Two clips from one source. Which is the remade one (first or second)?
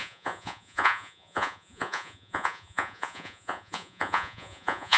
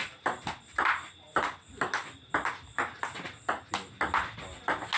first